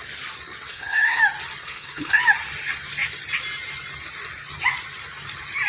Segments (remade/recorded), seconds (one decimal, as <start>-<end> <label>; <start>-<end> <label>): 0.0-0.7 recorded; 0.7-1.2 remade; 1.2-1.6 recorded; 1.6-2.2 remade; 2.2-5.7 recorded